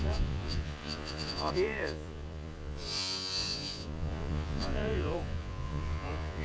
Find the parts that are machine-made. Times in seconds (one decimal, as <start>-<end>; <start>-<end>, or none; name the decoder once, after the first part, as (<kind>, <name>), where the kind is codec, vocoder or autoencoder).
0.0-6.4 (vocoder, Vocos)